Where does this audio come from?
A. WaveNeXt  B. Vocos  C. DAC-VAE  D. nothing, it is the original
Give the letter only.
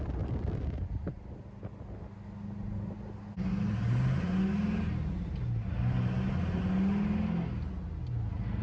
D